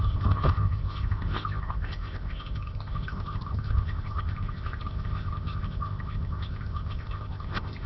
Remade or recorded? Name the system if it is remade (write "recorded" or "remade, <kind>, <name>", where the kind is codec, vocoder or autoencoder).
remade, codec, ZipCodec